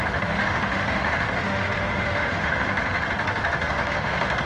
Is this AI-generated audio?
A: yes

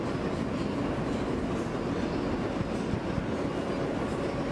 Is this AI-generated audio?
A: no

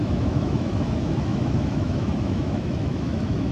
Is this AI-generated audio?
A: yes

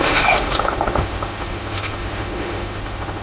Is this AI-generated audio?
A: yes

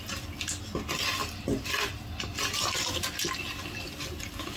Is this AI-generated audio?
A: no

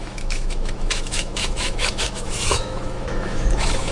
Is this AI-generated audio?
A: yes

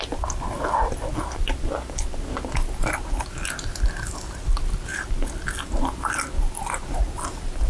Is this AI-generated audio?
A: no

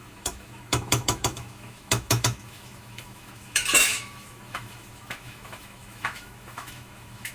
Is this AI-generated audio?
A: yes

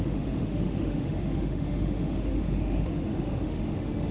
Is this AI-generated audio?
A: yes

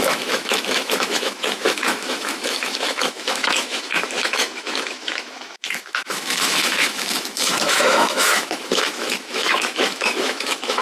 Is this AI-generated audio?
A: yes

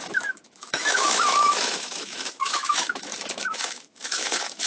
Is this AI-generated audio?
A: yes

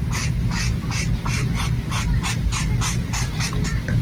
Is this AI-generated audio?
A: no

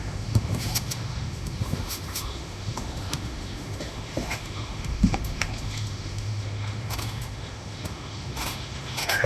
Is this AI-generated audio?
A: yes